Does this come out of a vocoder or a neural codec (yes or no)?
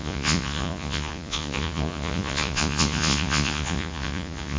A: yes